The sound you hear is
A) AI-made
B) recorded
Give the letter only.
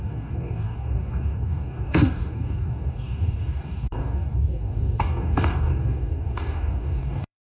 A